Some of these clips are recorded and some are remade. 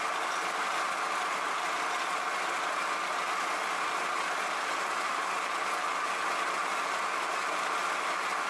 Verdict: recorded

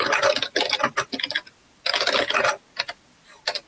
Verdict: recorded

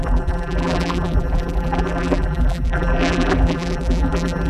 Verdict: remade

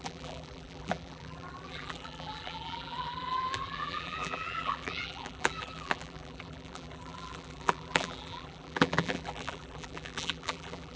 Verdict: remade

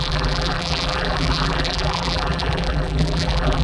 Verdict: remade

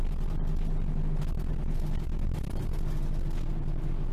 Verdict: recorded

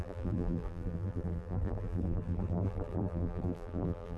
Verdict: remade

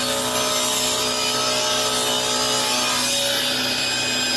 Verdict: recorded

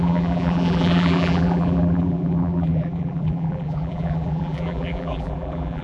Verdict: remade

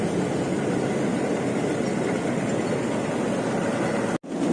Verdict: recorded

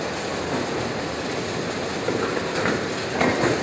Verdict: recorded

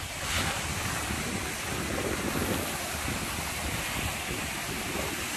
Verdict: recorded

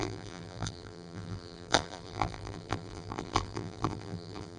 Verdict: remade